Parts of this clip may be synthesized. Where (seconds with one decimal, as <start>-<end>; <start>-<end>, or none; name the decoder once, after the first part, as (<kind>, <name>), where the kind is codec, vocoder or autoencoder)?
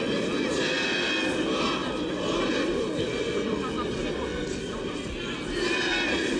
none